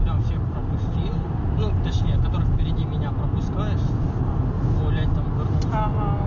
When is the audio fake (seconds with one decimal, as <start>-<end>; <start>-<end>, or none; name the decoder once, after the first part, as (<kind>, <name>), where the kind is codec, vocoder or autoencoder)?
none